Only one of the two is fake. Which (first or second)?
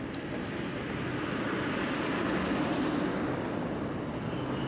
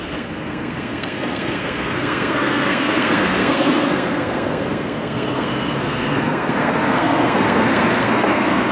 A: second